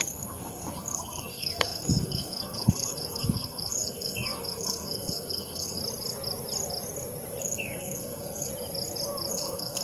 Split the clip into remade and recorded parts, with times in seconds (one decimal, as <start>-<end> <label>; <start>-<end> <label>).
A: 0.0-5.8 remade; 5.8-7.4 recorded; 7.4-8.5 remade; 8.5-9.3 recorded; 9.3-9.8 remade